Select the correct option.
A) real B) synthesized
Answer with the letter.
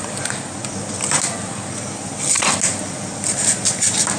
A